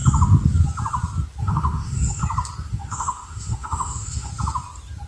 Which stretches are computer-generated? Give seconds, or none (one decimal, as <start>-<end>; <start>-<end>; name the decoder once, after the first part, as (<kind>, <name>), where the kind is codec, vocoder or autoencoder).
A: 1.4-2.2 (autoencoder, DAC-VAE); 2.7-4.3